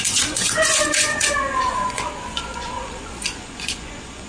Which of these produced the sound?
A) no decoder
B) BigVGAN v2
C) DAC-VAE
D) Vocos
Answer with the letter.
D